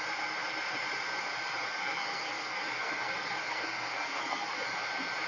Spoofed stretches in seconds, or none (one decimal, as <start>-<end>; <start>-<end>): 1.8-4.5